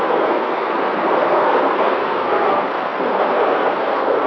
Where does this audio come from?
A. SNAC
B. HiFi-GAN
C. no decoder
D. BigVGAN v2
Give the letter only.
A